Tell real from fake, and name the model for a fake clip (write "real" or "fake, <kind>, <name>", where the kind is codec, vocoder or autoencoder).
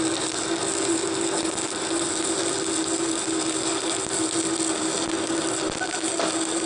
real